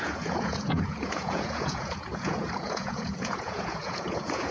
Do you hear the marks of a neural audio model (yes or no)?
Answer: yes